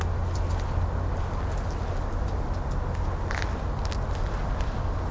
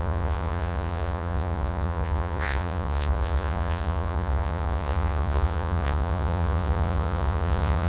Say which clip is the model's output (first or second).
second